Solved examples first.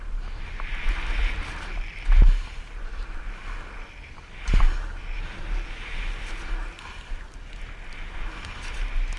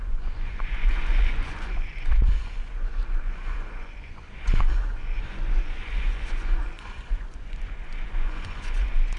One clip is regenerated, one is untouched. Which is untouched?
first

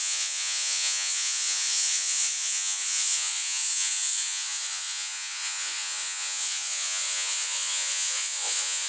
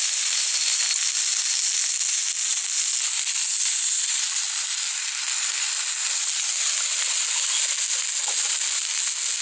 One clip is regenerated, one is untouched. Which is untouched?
second